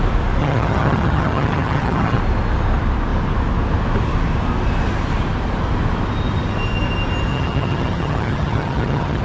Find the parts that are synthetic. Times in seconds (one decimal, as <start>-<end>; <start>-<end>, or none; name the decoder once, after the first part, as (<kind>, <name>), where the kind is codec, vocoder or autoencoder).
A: 0.4-2.2 (vocoder, HiFi-GAN); 7.3-9.2